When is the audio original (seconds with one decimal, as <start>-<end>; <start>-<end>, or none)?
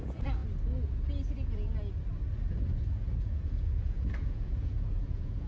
0.4-2.9